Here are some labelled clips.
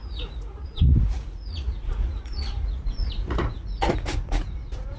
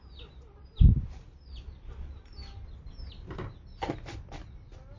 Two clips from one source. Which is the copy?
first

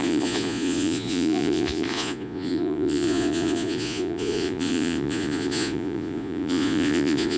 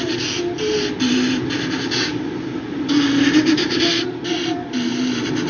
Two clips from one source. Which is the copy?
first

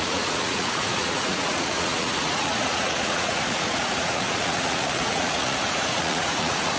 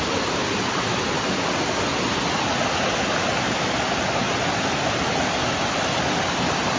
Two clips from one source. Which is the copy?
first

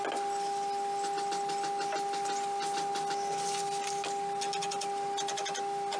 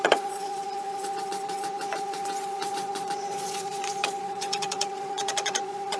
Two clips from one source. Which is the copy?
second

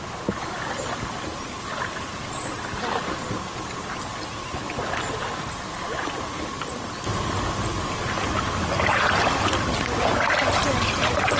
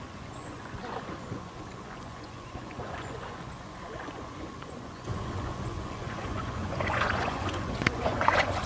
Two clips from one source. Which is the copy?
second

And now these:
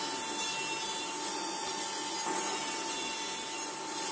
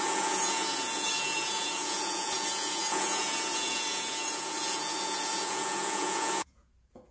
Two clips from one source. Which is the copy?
second